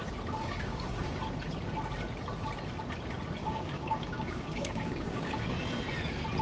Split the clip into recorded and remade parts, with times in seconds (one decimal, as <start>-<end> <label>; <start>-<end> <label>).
0.0-0.4 recorded; 0.4-1.2 remade; 1.2-3.4 recorded; 3.4-5.5 remade; 5.5-6.4 recorded